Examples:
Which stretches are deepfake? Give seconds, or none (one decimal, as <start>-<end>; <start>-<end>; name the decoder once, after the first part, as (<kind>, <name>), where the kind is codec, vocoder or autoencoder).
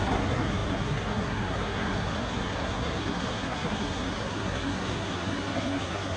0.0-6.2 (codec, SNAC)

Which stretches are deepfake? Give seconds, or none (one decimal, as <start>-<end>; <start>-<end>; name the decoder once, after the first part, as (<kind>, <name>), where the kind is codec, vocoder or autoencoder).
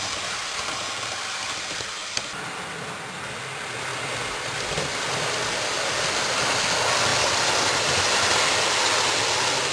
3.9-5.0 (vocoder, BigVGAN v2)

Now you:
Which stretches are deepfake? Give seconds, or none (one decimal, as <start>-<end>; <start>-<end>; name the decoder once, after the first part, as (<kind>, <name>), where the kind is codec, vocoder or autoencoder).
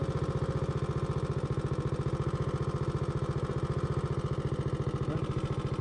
none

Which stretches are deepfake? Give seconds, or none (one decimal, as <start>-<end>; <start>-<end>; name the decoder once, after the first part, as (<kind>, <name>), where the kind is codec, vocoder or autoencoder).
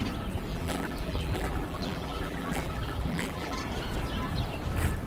0.5-3.6 (vocoder, BigVGAN v2)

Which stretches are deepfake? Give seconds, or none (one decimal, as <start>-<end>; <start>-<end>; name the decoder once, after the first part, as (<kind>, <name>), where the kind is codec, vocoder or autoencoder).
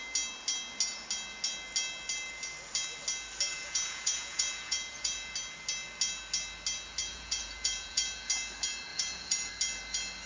3.5-5.3 (vocoder, Vocos); 7.1-8.3; 8.9-9.5